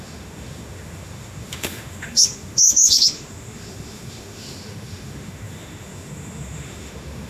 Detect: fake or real fake